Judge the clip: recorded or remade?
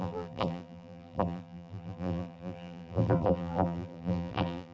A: remade